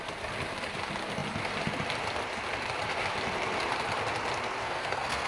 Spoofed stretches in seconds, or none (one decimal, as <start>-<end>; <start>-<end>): 4.6-5.3